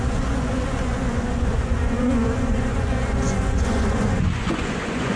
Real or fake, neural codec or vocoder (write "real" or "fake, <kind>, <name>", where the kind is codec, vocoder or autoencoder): fake, vocoder, Vocos